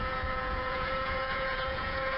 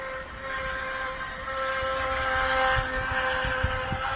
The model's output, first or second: first